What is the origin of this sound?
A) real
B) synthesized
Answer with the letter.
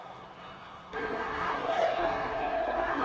B